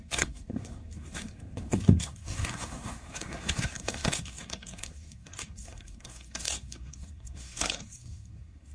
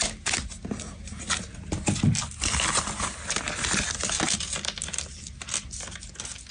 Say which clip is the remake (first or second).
first